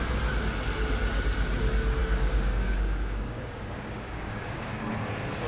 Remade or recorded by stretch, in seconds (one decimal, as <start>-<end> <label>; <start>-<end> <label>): 0.0-2.0 recorded; 2.0-4.8 remade; 4.8-5.5 recorded